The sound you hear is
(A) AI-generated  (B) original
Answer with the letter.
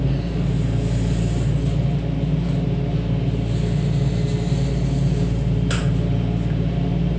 B